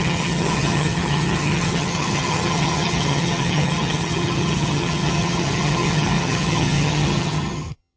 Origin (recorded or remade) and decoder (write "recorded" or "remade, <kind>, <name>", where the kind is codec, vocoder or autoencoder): remade, vocoder, HiFi-GAN